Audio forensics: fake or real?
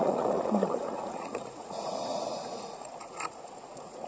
fake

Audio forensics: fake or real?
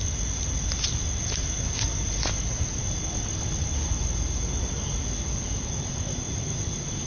real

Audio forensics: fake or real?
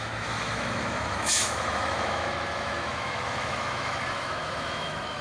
fake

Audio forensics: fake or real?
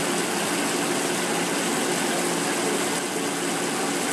real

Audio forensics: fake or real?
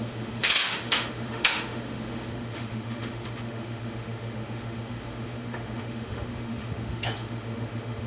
fake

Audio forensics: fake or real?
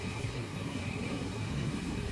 fake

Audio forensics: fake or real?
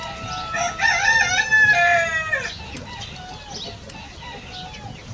real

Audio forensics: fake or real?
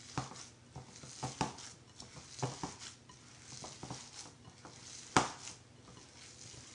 real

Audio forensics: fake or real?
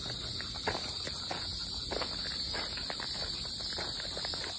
real